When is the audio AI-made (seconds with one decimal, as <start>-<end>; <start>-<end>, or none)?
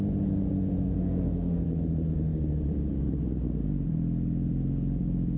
0.8-1.7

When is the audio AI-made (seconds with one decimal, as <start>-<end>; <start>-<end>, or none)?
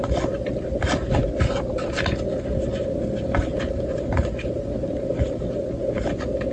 0.0-2.0; 3.5-5.5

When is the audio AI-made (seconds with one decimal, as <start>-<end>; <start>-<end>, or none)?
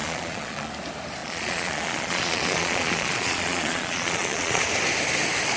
0.0-0.7; 1.2-4.6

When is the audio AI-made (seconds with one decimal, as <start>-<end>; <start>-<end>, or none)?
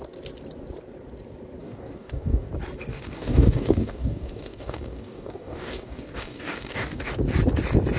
1.6-2.5; 2.9-7.1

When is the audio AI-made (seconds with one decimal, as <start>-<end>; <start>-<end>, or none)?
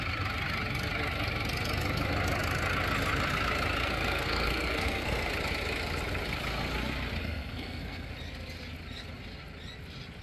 3.8-5.3; 7.2-8.1